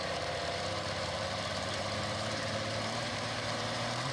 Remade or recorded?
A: remade